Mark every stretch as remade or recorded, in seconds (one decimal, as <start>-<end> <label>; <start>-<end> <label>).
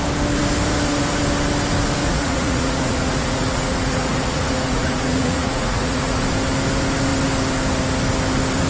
0.0-2.0 recorded; 2.0-6.2 remade; 6.2-8.7 recorded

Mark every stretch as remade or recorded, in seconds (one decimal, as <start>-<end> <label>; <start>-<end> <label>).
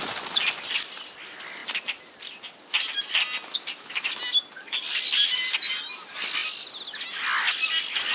0.0-8.1 recorded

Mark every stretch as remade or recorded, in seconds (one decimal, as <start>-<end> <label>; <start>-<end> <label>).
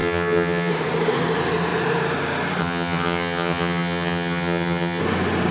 0.0-0.7 remade; 0.7-2.6 recorded; 2.6-5.0 remade; 5.0-5.5 recorded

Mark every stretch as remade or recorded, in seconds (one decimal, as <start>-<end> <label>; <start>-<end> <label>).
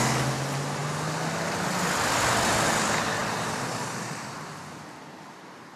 0.0-5.8 recorded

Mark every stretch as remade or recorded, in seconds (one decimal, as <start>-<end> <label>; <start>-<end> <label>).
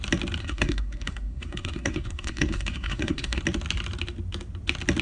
0.0-0.4 recorded; 0.4-3.4 remade; 3.4-5.0 recorded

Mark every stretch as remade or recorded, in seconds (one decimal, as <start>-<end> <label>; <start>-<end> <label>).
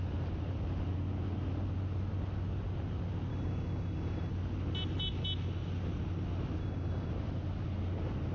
0.0-3.3 recorded; 3.3-4.3 remade; 4.3-6.6 recorded; 6.6-7.1 remade; 7.1-8.3 recorded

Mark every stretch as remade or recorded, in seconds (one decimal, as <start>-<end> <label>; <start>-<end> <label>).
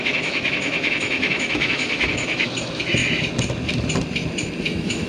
0.0-3.0 remade; 3.0-4.6 recorded; 4.6-5.1 remade